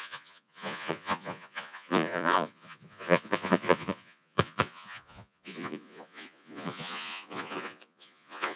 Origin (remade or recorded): remade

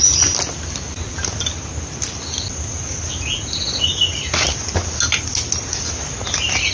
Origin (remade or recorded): recorded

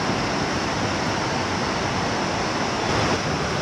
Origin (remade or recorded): recorded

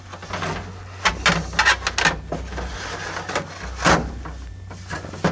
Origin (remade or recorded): recorded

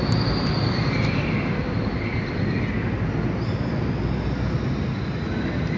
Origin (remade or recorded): recorded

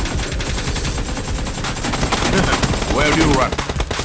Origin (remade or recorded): recorded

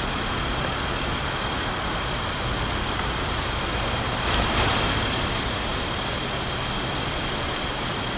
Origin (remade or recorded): recorded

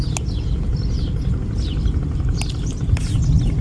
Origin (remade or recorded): recorded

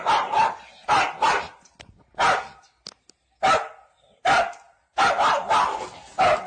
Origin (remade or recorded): recorded